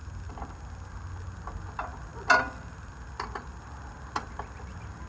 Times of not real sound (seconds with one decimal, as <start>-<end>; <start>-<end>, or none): none